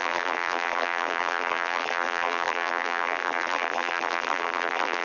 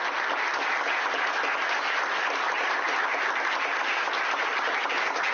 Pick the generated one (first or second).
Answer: first